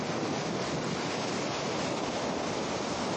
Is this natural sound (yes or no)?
yes